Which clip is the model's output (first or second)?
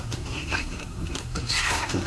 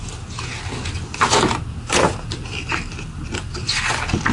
first